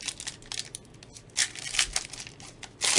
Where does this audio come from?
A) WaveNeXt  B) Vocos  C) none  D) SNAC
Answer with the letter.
C